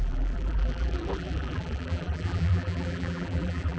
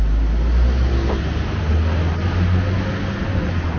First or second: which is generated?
first